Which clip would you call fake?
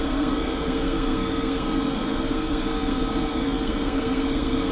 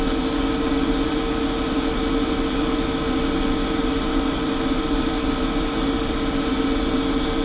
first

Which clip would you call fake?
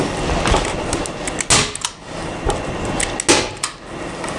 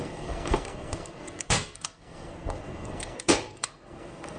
second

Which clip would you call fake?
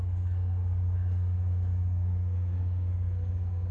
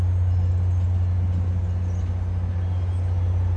first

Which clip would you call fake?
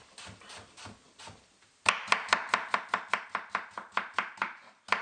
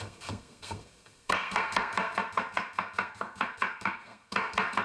second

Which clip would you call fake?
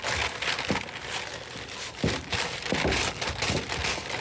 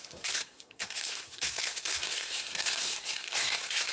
second